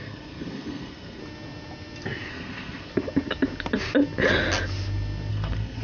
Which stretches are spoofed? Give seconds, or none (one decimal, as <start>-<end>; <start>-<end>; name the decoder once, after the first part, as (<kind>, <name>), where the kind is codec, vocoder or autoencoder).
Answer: 0.0-1.2 (codec, SNAC); 2.3-2.9; 5.3-5.8

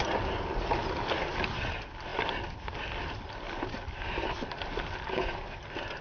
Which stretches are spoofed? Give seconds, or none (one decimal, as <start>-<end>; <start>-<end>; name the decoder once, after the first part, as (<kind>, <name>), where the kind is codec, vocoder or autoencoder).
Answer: none

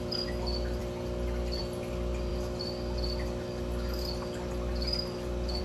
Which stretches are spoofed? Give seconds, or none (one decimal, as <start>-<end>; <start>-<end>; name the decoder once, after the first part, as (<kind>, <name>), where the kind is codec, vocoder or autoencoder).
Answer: none

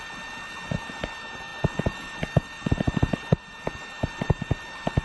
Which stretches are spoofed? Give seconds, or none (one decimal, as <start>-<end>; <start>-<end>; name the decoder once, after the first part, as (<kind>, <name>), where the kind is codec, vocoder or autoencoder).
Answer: none

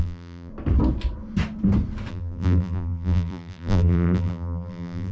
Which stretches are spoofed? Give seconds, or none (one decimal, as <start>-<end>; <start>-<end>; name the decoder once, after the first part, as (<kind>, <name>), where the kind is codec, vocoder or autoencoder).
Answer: 0.0-0.5 (vocoder, BigVGAN v2); 2.1-5.1

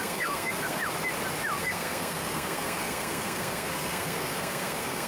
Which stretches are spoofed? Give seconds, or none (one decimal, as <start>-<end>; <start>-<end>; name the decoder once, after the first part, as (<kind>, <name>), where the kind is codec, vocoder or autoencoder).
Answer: 0.0-0.8 (codec, SNAC); 1.6-5.1

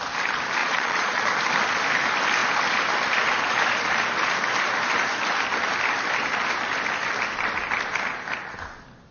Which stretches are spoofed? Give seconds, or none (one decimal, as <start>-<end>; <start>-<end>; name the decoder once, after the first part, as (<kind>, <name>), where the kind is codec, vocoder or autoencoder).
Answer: 0.6-1.2 (vocoder, Vocos)